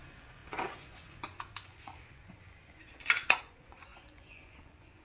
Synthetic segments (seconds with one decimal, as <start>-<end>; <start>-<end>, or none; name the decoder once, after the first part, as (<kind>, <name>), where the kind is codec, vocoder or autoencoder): 0.0-5.0 (vocoder, Vocos)